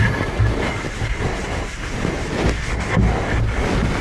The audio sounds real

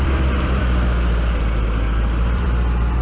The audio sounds fake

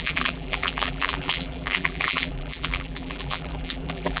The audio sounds fake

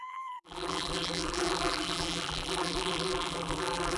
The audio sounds fake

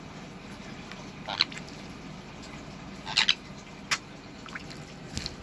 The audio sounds real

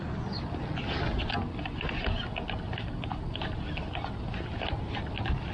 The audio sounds real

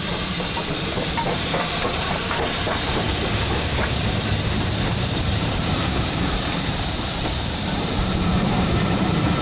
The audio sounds fake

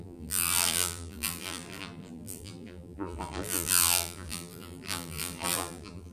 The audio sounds fake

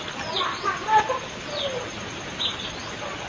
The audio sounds real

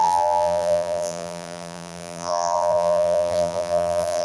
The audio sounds fake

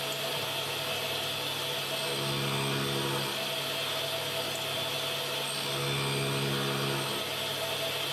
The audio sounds real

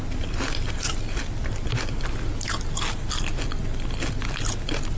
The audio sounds real